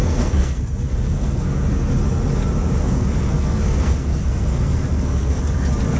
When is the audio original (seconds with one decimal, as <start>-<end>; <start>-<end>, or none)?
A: 1.9-2.8; 5.4-6.0